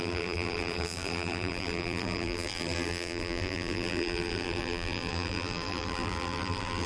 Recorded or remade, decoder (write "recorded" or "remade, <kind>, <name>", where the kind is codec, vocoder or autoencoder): remade, vocoder, BigVGAN v2